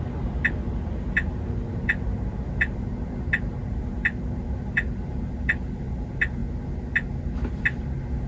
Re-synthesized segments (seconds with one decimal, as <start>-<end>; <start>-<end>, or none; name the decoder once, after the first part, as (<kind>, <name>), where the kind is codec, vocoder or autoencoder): none